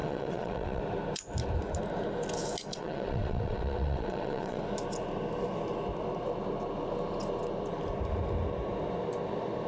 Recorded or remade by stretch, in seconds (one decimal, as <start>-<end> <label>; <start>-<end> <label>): 0.0-0.8 remade; 0.8-2.7 recorded; 2.7-4.6 remade; 4.6-9.7 recorded